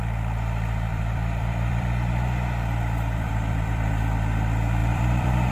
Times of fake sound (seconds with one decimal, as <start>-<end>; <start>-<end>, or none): 0.9-3.9; 4.8-5.5